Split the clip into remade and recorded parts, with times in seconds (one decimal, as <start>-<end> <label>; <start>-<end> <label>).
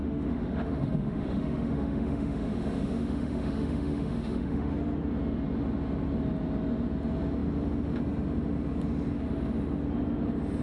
0.0-4.7 remade; 4.7-10.6 recorded